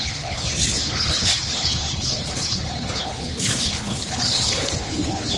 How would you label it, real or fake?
fake